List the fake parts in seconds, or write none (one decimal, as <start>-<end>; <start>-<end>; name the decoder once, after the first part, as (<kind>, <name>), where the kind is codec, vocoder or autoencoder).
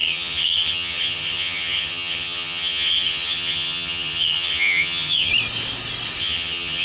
0.0-5.3 (vocoder, HiFi-GAN); 6.2-6.8